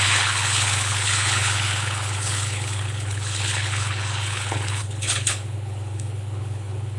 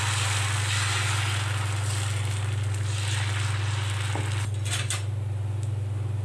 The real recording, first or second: second